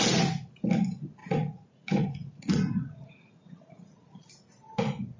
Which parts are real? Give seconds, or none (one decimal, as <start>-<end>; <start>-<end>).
0.0-1.2; 4.3-5.2